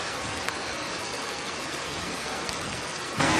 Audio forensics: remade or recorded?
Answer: remade